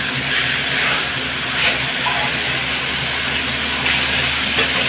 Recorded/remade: recorded